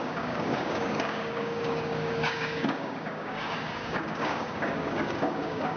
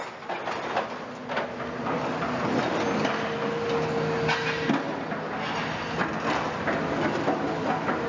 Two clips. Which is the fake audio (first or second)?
first